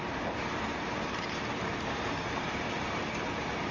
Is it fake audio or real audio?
fake